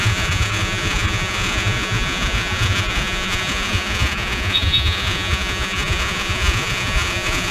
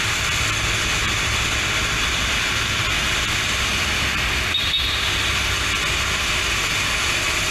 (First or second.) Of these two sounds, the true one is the second